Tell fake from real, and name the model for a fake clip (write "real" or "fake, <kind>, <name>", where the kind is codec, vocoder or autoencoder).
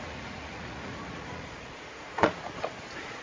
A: fake, vocoder, Vocos